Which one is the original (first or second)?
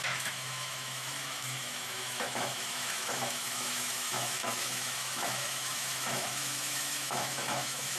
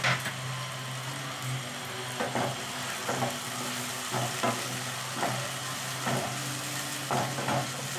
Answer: second